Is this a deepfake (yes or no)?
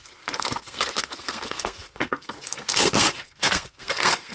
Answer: yes